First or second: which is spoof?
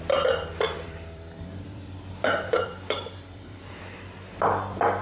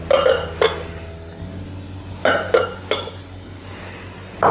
first